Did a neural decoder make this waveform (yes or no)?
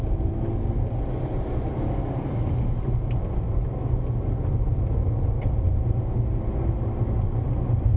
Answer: no